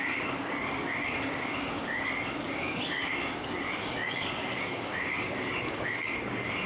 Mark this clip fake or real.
fake